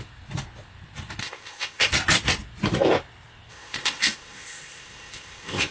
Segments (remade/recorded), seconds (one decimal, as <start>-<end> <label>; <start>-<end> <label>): 0.0-1.2 recorded; 1.2-1.9 remade; 1.9-3.5 recorded; 3.5-5.7 remade